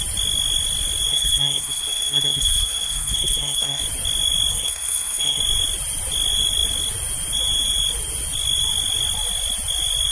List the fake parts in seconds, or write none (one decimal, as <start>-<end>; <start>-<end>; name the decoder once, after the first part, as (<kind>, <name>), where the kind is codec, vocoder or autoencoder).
1.1-3.8 (codec, SNAC); 4.5-5.4